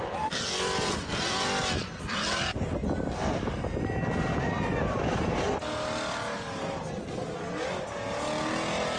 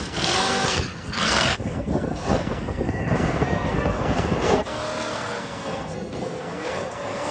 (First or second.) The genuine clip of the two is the first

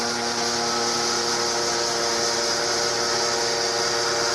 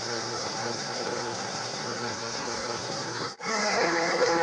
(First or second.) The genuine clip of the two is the first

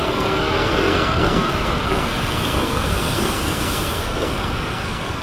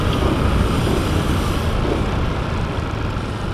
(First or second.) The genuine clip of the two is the second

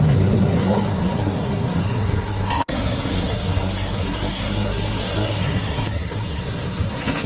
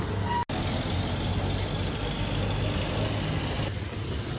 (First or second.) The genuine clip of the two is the second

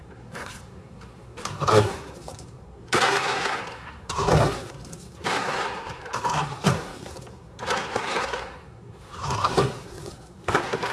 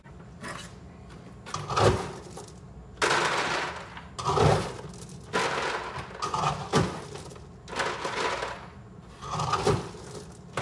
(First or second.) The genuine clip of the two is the second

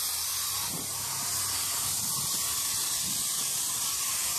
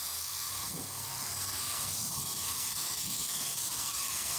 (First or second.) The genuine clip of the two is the first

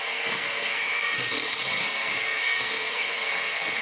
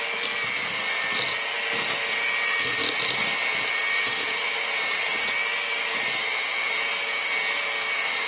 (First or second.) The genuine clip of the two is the second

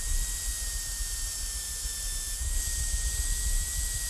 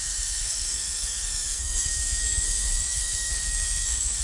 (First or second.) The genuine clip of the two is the first